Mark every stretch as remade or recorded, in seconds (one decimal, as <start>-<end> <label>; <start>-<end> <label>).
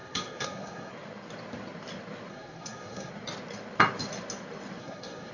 0.0-0.9 remade; 0.9-2.3 recorded; 2.3-3.1 remade; 3.1-4.8 recorded; 4.8-5.3 remade